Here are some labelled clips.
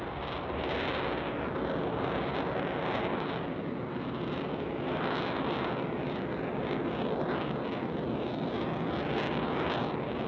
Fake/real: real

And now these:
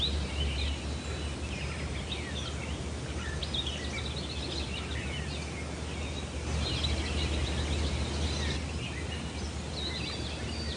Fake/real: real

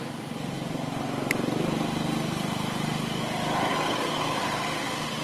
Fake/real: real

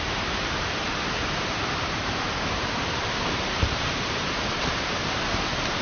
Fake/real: fake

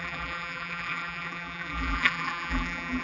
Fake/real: fake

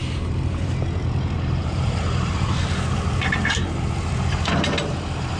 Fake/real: fake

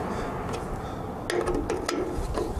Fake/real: real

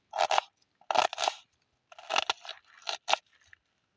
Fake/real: real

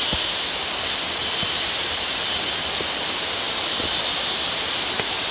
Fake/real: real